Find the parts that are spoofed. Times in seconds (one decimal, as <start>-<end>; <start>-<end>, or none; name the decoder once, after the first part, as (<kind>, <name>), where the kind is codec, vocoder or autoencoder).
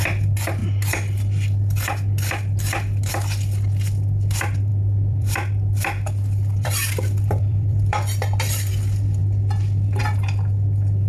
4.7-8.7 (vocoder, BigVGAN v2)